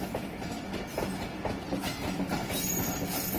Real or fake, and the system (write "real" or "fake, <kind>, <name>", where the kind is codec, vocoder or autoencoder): real